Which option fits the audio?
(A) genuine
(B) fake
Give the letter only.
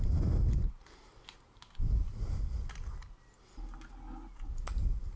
A